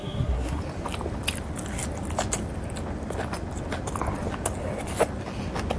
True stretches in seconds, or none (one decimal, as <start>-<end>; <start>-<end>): 0.6-5.8